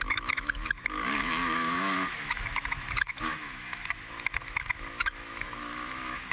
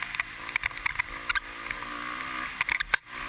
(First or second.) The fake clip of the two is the first